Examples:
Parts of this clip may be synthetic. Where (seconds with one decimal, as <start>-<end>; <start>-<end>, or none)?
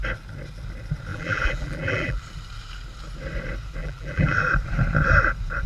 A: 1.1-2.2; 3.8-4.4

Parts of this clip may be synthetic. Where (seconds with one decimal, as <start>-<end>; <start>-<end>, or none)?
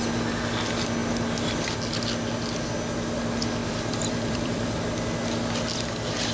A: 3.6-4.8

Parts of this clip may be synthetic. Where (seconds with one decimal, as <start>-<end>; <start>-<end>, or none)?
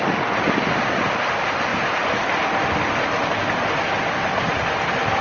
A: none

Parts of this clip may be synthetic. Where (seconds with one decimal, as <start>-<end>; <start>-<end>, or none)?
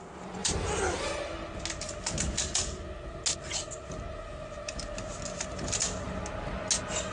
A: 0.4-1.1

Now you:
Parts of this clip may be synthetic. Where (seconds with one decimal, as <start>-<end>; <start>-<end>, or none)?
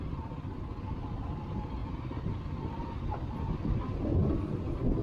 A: none